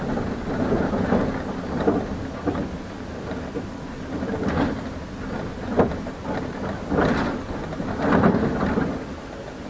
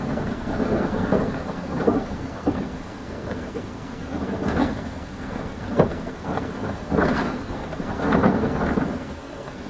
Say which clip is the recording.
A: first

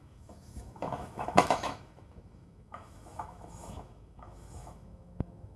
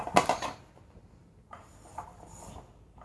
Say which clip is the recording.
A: second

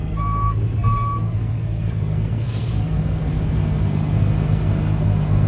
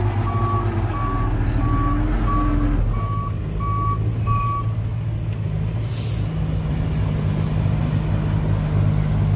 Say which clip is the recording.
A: second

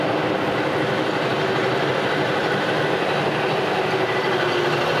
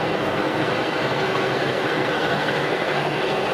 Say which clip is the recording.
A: first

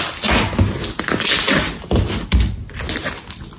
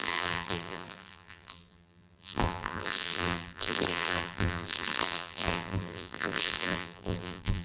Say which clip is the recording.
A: first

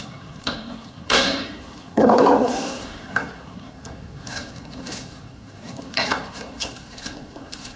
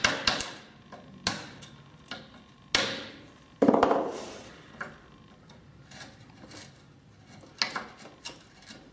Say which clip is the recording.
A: second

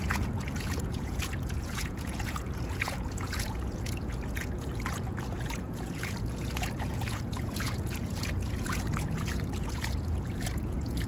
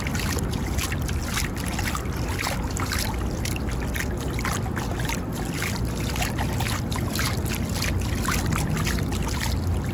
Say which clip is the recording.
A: second